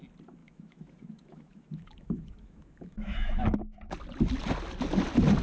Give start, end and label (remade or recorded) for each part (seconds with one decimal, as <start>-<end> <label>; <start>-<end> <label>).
0.0-0.4 recorded; 0.4-3.6 remade; 3.6-5.4 recorded